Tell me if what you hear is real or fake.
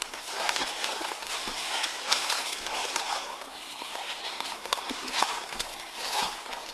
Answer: fake